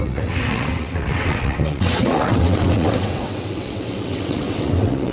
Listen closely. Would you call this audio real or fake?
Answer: fake